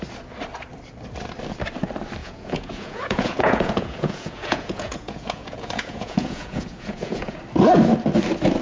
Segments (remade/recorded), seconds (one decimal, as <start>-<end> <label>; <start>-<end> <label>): 0.0-2.2 recorded; 2.2-7.4 remade; 7.4-8.6 recorded